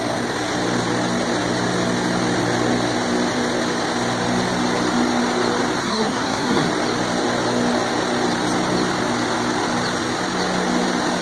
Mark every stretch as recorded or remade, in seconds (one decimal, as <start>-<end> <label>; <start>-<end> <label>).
0.0-5.8 recorded; 5.8-6.7 remade; 6.7-11.2 recorded